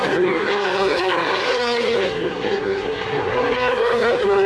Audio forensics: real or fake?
fake